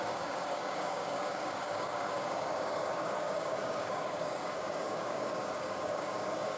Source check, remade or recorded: remade